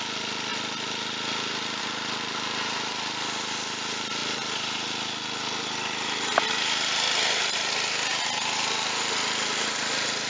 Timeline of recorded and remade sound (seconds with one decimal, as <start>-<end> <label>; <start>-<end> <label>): 0.0-10.3 recorded